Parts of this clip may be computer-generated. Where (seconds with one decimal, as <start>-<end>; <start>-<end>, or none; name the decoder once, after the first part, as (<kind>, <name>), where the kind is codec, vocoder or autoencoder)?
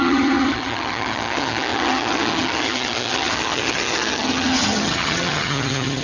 0.0-6.0 (vocoder, HiFi-GAN)